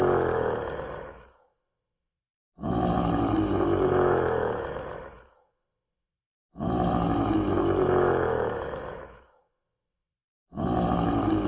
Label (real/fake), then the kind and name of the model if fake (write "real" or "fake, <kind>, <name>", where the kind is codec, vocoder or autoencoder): fake, autoencoder, DAC-VAE